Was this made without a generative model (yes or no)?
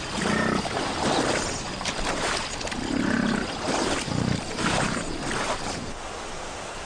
yes